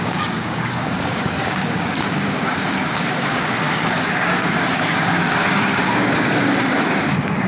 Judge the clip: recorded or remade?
remade